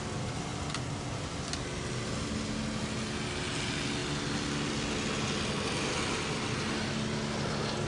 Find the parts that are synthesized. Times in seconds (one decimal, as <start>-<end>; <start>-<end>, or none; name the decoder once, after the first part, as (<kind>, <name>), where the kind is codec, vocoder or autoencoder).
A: none